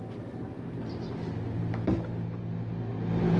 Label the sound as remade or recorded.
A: recorded